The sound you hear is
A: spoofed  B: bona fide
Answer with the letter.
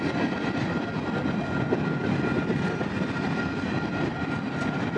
B